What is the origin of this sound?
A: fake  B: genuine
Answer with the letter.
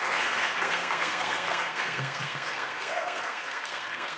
A